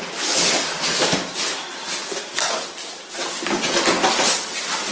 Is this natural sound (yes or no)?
yes